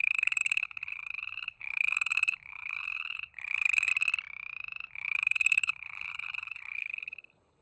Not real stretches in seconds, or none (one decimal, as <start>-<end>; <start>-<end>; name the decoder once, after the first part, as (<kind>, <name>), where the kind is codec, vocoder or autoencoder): 0.0-3.9 (codec, HILCodec); 4.9-7.6

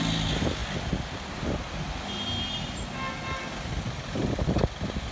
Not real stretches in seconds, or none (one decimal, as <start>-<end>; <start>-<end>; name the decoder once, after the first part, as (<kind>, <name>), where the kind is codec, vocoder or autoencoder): none

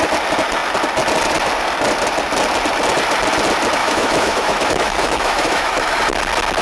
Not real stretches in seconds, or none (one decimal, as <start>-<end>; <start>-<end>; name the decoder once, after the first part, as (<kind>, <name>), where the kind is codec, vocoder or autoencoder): 3.8-6.0 (autoencoder, DAC-VAE)

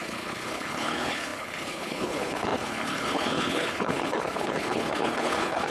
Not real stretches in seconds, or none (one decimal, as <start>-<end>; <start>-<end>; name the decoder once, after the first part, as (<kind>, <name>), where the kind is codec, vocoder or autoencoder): 0.0-5.7 (codec, HILCodec)

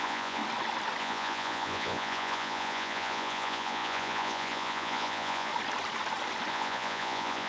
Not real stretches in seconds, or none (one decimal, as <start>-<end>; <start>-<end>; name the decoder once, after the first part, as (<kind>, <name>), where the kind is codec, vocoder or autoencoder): 0.0-0.4 (vocoder, Vocos); 1.0-5.5; 6.5-7.5

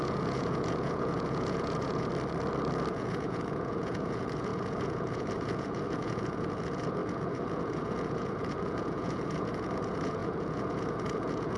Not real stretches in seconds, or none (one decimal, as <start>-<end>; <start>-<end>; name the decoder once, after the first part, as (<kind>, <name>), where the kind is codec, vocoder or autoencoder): 0.0-2.1 (vocoder, Vocos); 2.9-11.6

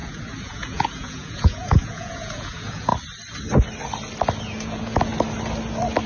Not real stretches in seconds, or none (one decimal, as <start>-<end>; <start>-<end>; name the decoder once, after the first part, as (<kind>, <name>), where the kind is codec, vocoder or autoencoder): 0.0-2.9 (vocoder, Vocos); 4.4-5.1